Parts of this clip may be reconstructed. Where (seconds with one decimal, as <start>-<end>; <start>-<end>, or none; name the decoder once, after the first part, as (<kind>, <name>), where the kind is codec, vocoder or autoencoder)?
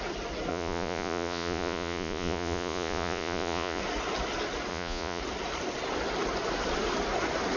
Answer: 0.5-3.8 (vocoder, Vocos); 4.7-5.2